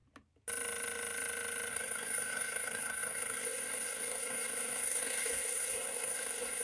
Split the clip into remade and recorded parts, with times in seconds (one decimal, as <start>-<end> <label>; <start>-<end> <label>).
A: 0.0-1.7 recorded; 1.7-6.6 remade